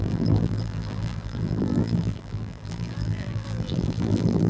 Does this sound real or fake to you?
fake